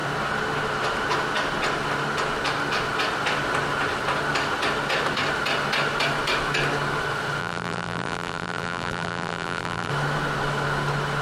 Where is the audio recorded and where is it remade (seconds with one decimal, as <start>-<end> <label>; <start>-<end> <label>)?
0.0-7.4 recorded; 7.4-9.9 remade; 9.9-11.2 recorded